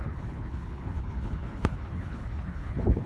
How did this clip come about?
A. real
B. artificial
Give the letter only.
B